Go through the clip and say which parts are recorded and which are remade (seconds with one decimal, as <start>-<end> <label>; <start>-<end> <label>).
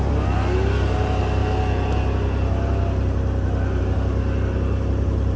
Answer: 0.0-1.4 remade; 1.4-3.8 recorded; 3.8-5.4 remade